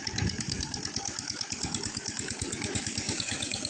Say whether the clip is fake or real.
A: fake